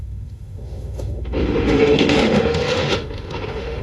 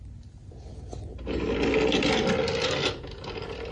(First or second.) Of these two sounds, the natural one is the second